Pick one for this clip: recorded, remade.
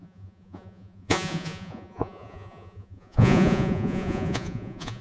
remade